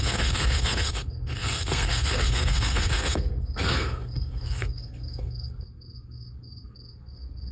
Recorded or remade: remade